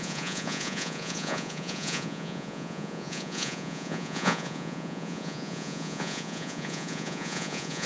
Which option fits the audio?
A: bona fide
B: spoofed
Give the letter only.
B